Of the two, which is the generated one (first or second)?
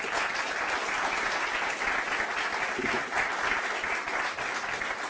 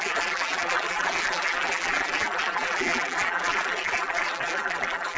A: second